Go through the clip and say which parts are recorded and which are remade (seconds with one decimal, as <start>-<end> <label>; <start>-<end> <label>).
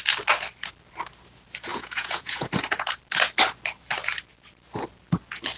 0.0-1.7 recorded; 1.7-2.5 remade; 2.5-5.6 recorded